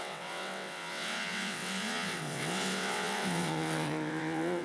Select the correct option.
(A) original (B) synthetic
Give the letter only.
B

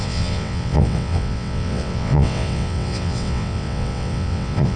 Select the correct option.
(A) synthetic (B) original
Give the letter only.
A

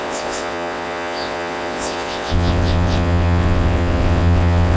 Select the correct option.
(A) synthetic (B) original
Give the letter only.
A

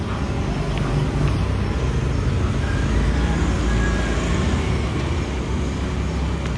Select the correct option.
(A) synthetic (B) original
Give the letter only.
B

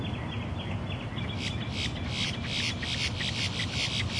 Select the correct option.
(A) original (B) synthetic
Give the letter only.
A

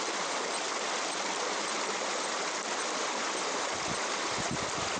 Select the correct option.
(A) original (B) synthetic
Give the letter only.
A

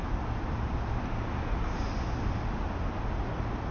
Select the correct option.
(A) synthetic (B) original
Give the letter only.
B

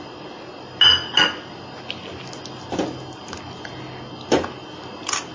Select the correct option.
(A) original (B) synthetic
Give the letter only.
A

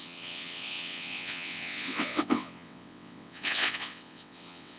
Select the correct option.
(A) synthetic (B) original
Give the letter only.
A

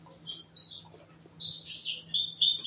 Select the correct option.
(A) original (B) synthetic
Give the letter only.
A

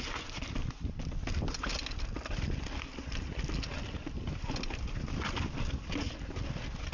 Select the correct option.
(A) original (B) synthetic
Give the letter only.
A